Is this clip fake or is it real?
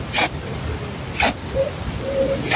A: real